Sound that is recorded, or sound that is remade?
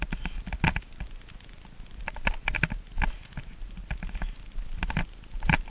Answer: recorded